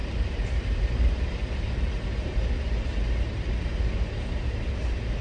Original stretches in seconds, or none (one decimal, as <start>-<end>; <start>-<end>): 2.5-5.2